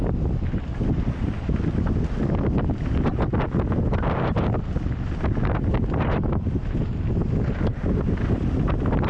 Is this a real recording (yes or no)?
yes